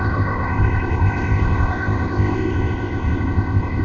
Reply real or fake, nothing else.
fake